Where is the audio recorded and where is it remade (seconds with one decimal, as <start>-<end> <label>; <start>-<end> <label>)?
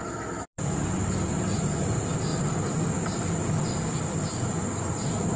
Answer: 0.0-5.4 recorded